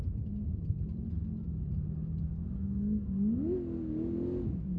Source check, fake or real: real